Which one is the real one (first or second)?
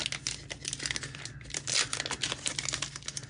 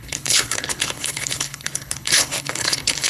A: first